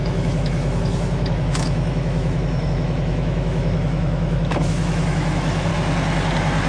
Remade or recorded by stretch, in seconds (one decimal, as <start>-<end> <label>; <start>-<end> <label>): 0.0-5.7 remade; 5.7-6.7 recorded